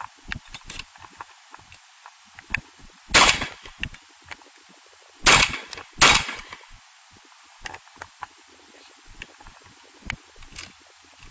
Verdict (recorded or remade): recorded